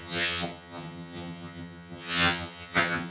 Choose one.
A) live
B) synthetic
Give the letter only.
B